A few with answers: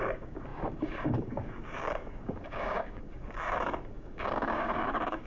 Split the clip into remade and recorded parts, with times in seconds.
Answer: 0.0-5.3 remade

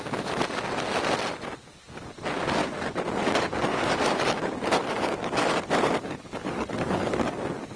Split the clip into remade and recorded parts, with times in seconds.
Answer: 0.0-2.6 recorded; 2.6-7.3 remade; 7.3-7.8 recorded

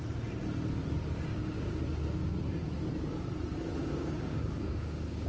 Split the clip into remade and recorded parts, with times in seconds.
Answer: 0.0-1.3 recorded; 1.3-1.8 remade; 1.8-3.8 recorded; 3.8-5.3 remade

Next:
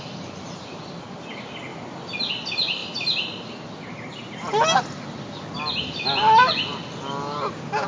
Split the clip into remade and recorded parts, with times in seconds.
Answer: 0.0-7.9 recorded

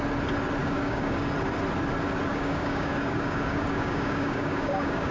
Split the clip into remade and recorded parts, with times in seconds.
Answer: 0.0-0.6 recorded; 0.6-1.3 remade; 1.3-2.3 recorded; 2.3-5.1 remade

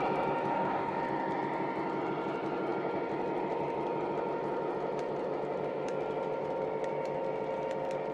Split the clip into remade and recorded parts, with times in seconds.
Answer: 0.0-0.5 recorded; 0.5-1.0 remade; 1.0-8.1 recorded